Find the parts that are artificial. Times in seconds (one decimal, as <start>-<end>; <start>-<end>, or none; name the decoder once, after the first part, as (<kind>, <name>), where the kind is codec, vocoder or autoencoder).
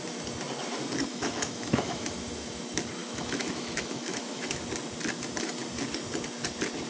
1.1-2.1 (autoencoder, DAC-VAE); 3.0-4.6